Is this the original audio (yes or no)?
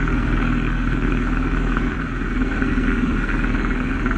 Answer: no